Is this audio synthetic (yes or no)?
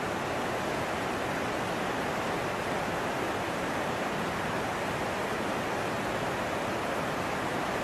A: no